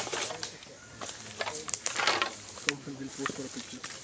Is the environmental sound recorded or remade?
recorded